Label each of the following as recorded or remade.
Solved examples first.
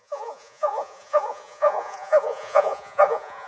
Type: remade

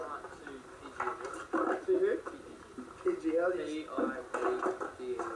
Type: recorded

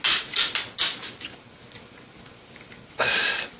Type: recorded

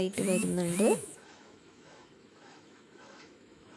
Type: remade